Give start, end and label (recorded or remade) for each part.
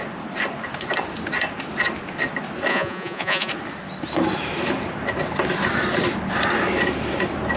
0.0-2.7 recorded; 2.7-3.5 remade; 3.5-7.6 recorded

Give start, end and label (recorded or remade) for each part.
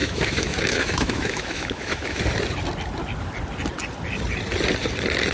0.0-2.2 remade; 2.2-5.3 recorded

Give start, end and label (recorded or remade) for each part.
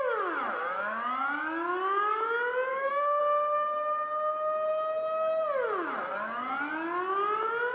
0.0-2.7 recorded; 2.7-3.2 remade; 3.2-7.7 recorded